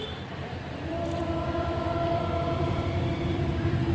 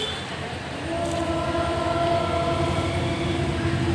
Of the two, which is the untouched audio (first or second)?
second